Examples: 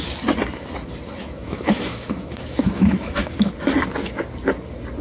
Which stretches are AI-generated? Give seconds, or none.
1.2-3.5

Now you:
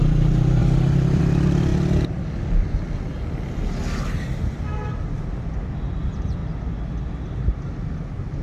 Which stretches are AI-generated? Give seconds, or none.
0.0-1.7; 5.1-8.4

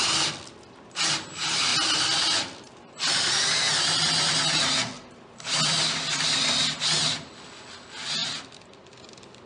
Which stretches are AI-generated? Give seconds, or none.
none

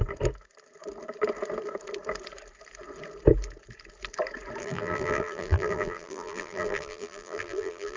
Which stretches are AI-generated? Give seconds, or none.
4.6-8.0